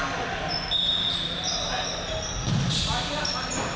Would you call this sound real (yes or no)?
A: yes